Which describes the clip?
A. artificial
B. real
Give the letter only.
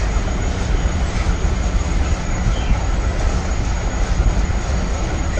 B